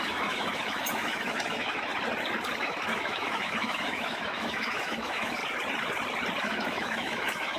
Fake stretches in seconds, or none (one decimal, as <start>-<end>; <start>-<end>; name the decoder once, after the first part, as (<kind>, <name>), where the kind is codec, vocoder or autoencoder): 0.0-1.9 (autoencoder, DAC-VAE); 2.6-5.4; 6.4-7.6